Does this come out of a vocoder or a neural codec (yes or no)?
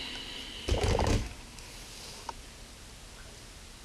no